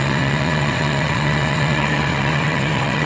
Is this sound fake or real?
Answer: fake